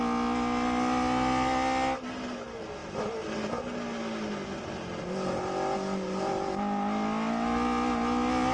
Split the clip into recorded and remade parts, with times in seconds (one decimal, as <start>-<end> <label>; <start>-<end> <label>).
0.0-8.5 recorded